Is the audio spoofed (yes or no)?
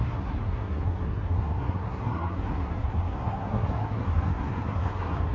yes